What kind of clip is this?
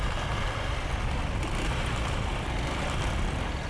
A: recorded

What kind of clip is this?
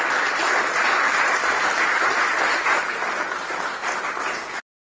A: recorded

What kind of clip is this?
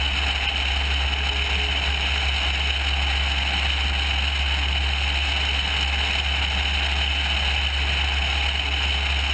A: recorded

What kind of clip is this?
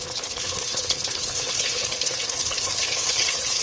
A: remade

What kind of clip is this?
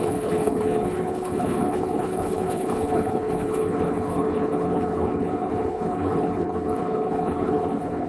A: remade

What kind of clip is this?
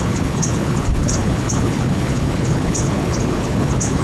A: remade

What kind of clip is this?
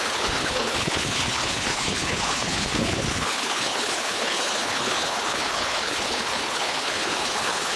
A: remade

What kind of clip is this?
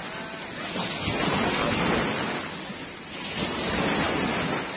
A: recorded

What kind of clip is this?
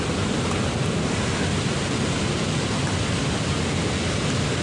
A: recorded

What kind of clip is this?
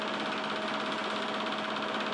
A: recorded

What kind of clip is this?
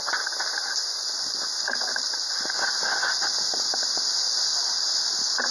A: recorded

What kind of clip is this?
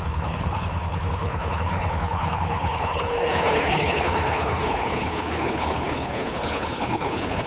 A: remade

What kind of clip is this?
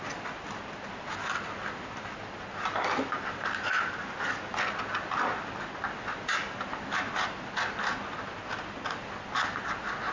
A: recorded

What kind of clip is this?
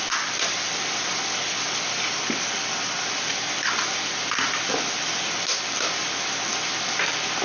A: recorded